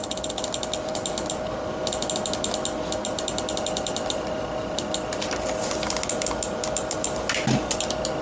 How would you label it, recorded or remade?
recorded